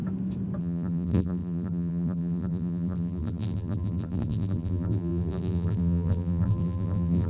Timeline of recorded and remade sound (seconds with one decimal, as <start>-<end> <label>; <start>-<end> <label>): 0.0-0.6 recorded; 0.6-7.3 remade